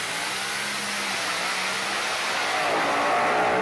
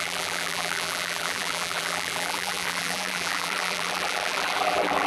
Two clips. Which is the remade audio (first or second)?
second